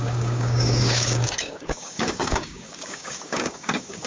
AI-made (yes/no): yes